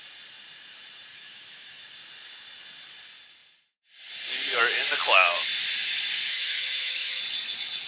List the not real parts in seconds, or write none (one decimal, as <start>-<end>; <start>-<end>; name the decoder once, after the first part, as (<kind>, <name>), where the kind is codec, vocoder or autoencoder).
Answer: 1.1-1.8 (autoencoder, DAC-VAE); 6.3-7.2